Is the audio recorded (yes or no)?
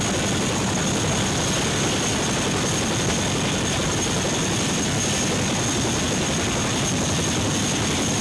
yes